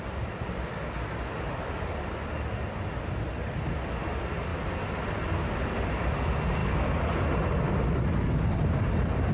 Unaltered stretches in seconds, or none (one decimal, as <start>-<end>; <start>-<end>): 0.0-9.3